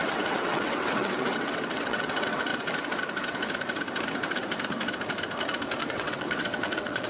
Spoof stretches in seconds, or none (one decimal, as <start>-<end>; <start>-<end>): 0.0-2.5; 5.8-7.1